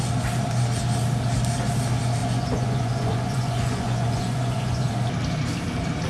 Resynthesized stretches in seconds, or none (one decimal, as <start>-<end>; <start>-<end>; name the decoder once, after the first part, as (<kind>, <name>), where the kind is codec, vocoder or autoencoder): 2.2-4.9 (vocoder, Vocos)